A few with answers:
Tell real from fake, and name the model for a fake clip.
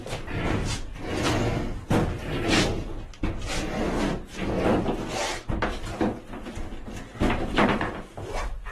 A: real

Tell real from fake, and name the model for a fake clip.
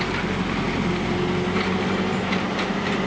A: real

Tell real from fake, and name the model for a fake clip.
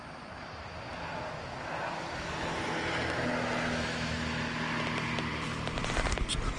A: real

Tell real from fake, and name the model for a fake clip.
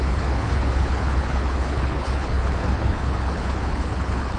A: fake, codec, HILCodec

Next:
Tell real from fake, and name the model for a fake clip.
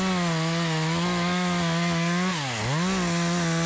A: real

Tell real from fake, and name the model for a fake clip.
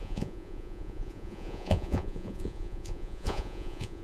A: fake, vocoder, Vocos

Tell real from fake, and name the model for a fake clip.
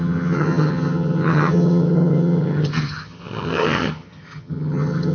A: fake, vocoder, HiFi-GAN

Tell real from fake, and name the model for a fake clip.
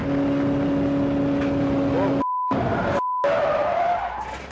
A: real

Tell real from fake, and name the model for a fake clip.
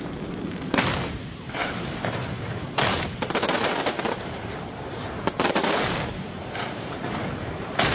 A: fake, vocoder, BigVGAN v2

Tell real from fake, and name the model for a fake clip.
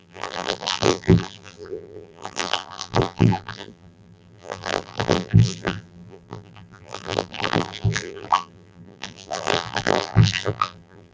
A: fake, vocoder, BigVGAN v2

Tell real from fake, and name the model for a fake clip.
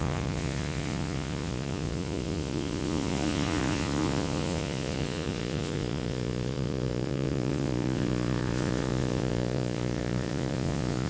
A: fake, vocoder, Vocos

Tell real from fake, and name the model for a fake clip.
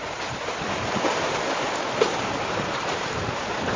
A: fake, vocoder, BigVGAN v2